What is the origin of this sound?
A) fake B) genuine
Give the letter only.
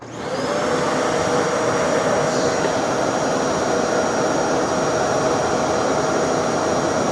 B